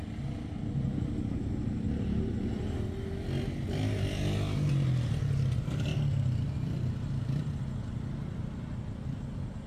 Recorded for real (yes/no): yes